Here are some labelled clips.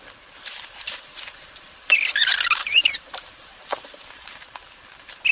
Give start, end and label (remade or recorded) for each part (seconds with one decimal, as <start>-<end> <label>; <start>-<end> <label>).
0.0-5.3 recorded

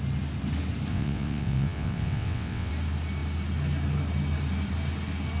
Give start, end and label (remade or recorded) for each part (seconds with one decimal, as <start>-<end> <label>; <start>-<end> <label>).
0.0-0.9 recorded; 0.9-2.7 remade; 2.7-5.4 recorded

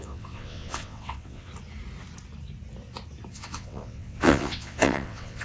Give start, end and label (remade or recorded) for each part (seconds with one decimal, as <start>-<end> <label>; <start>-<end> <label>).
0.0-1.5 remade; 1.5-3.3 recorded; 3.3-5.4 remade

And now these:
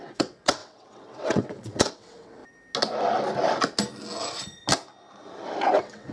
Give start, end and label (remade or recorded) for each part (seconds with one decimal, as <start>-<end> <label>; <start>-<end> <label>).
0.0-2.4 remade; 2.4-5.6 recorded; 5.6-6.1 remade